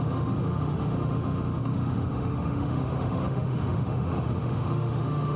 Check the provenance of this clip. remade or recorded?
remade